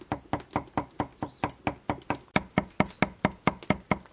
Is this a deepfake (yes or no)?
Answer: no